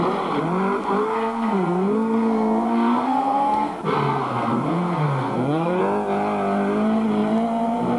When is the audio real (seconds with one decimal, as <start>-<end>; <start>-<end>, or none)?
0.0-1.0; 5.8-8.0